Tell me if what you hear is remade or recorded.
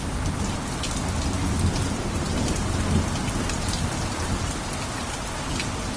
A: recorded